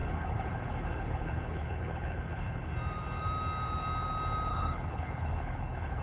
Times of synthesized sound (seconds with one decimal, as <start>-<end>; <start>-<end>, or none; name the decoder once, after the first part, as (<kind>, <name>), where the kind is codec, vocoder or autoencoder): 0.0-2.7 (codec, HILCodec); 4.5-6.0